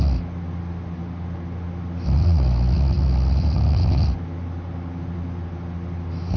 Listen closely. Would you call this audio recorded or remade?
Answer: recorded